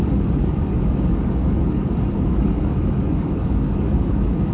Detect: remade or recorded remade